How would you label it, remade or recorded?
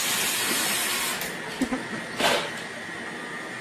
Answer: recorded